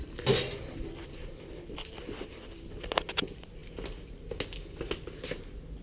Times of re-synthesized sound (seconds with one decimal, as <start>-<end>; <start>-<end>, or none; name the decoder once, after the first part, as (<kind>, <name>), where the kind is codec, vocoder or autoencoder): none